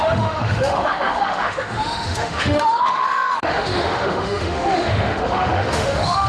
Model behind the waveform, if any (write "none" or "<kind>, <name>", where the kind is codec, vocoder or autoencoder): autoencoder, DAC-VAE